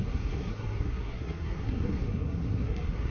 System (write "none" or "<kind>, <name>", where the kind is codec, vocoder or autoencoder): codec, SNAC